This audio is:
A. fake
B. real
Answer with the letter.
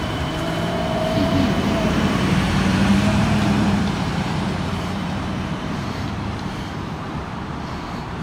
A